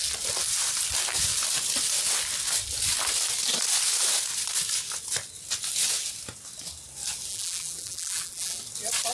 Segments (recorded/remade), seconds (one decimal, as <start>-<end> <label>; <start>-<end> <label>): 0.0-7.3 recorded; 7.3-8.6 remade; 8.6-9.1 recorded